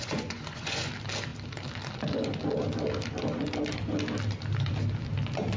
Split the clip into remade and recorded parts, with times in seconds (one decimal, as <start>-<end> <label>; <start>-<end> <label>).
0.0-0.9 remade; 0.9-5.6 recorded